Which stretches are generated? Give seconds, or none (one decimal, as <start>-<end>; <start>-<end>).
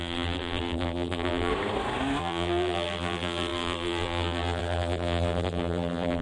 0.0-1.5; 2.2-6.2